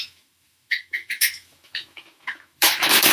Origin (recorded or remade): remade